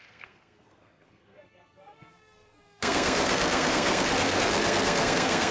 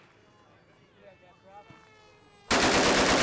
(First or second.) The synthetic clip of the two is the first